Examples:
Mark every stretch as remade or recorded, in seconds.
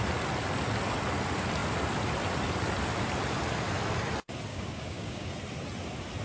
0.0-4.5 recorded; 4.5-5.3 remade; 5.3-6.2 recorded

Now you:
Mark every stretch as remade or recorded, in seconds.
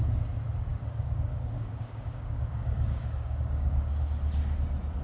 0.0-0.7 recorded; 0.7-3.7 remade; 3.7-5.0 recorded